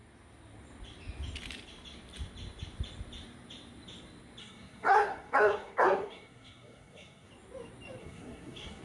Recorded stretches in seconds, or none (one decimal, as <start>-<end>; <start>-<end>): 0.0-4.4; 7.3-8.0